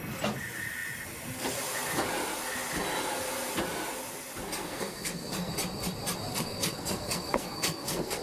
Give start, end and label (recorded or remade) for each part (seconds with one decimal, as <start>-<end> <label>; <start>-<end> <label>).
0.0-4.6 recorded; 4.6-5.5 remade; 5.5-6.3 recorded; 6.3-8.2 remade